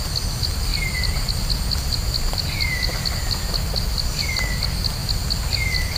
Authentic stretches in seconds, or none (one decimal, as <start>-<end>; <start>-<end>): 0.0-0.7; 4.3-5.0

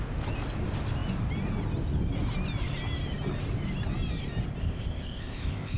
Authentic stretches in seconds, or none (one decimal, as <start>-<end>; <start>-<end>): 0.0-4.6

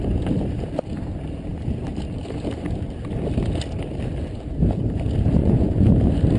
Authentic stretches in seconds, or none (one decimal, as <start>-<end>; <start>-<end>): 0.0-5.4; 5.9-6.4

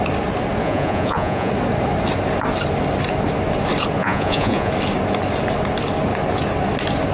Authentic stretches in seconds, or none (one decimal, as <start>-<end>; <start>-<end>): 0.0-0.6; 1.5-4.0; 4.7-7.1

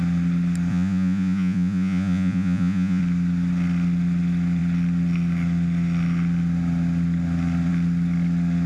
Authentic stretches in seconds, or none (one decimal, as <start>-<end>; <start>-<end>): 0.0-0.7; 3.0-8.7

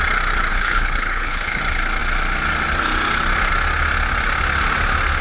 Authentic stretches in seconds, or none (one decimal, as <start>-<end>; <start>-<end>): 0.0-0.5; 1.6-5.2

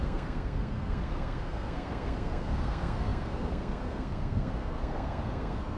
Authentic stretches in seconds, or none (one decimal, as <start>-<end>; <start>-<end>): none